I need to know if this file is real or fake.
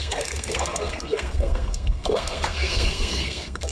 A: fake